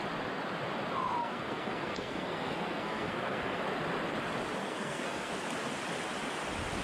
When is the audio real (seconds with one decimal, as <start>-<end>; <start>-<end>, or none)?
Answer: 0.0-1.2; 3.6-4.6; 5.3-6.8